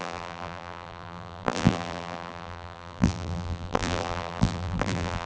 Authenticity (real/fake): fake